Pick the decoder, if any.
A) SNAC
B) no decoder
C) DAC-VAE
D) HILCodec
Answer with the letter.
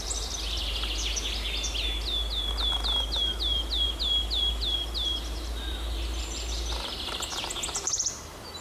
B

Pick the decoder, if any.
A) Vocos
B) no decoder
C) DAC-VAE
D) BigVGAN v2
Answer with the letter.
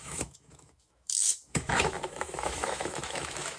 C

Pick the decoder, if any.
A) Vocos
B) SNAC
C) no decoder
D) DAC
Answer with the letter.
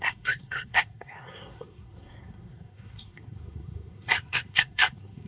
B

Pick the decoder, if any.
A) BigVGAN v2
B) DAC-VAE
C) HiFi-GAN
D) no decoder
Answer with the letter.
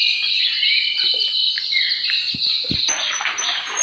D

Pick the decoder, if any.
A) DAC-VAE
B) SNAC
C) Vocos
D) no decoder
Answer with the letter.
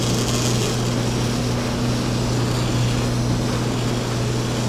D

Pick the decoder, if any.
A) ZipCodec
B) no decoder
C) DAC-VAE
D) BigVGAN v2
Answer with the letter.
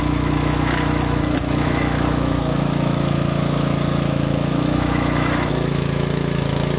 C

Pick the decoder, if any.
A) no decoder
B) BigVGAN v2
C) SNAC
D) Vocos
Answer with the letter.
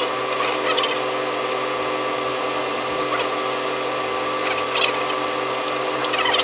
A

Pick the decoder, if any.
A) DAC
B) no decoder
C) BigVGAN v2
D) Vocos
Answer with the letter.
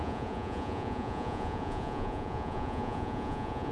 D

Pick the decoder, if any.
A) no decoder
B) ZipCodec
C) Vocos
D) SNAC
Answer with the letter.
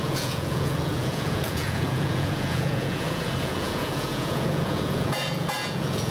C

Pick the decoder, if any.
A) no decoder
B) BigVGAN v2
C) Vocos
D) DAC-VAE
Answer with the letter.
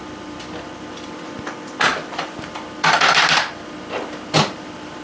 B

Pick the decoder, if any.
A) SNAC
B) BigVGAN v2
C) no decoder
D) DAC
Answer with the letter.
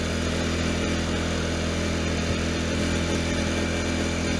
C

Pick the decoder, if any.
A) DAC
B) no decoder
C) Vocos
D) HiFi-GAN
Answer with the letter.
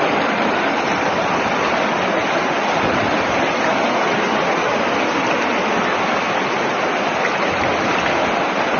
B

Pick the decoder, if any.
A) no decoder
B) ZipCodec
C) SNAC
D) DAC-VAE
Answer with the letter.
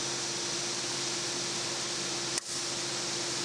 A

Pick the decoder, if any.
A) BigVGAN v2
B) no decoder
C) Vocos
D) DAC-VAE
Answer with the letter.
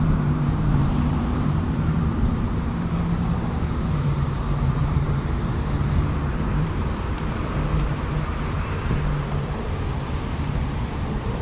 A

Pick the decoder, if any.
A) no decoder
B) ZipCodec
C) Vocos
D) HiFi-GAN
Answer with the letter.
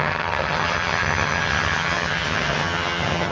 D